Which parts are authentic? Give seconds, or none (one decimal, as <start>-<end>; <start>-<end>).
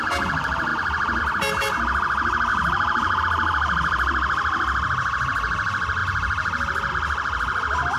0.0-2.5; 3.2-8.0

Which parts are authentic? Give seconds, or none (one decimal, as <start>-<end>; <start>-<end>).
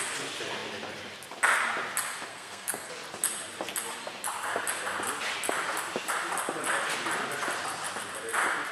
0.0-2.3; 2.9-8.7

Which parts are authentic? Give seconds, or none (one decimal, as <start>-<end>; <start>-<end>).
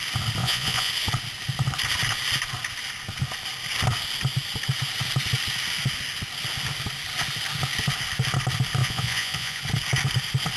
0.0-0.4; 0.9-8.8; 9.6-10.6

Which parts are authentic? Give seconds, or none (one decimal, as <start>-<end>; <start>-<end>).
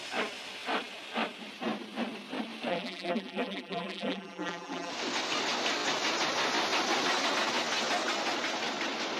0.0-2.7; 4.9-9.2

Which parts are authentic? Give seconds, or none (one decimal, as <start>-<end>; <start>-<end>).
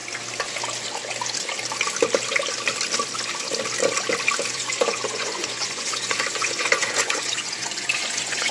0.0-4.5